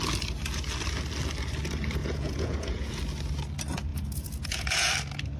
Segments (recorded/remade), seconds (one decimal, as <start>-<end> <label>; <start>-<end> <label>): 0.0-2.0 recorded; 2.0-3.0 remade; 3.0-3.9 recorded; 3.9-4.9 remade; 4.9-5.4 recorded